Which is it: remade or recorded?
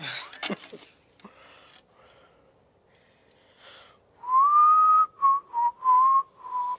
recorded